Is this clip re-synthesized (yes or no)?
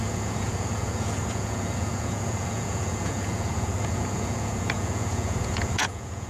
yes